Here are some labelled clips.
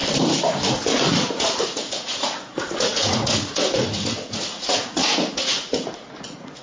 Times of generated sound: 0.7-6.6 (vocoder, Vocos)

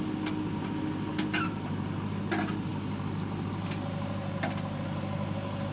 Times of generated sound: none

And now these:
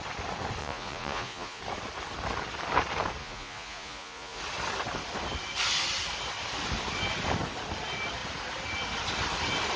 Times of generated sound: 0.6-1.6 (vocoder, Vocos); 3.2-4.4